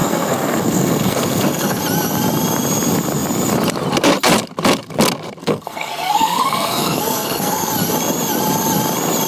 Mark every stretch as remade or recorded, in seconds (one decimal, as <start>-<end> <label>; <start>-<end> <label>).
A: 0.0-1.8 remade; 1.8-5.4 recorded; 5.4-7.7 remade; 7.7-9.3 recorded